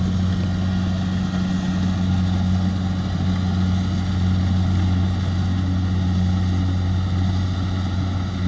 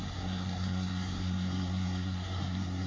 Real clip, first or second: first